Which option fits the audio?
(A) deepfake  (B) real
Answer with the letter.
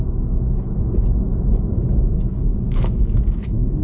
A